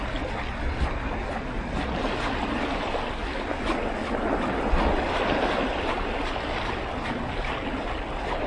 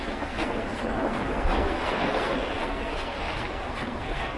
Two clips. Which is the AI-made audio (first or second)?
second